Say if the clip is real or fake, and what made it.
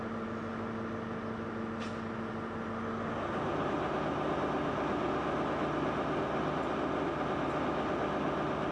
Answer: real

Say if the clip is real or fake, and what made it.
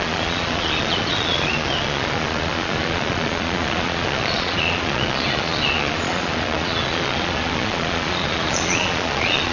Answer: fake, vocoder, Vocos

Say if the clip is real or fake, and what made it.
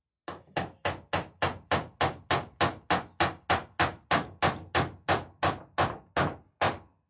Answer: real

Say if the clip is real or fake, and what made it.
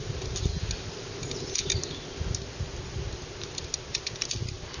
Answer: real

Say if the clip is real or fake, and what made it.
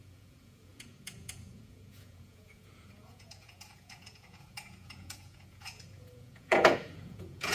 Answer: fake, vocoder, Vocos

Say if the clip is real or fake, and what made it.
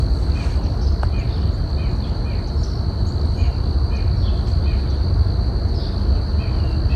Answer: real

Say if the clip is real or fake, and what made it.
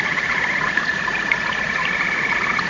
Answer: fake, vocoder, Vocos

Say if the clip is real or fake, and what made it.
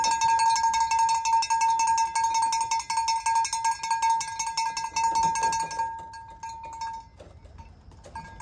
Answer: real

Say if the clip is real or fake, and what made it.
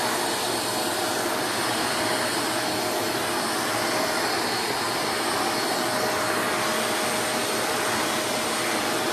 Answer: real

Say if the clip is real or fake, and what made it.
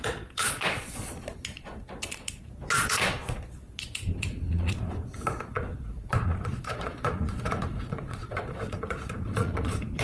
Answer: fake, vocoder, Vocos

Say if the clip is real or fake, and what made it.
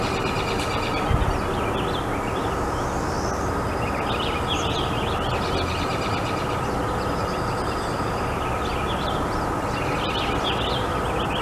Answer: real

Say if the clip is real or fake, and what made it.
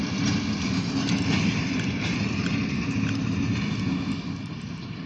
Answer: real